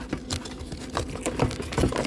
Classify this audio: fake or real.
real